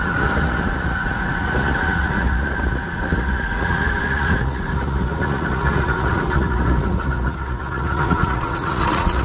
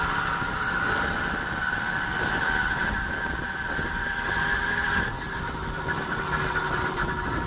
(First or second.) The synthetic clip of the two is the first